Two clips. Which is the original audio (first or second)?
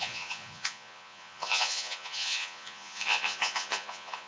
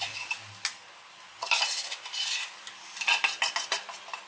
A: second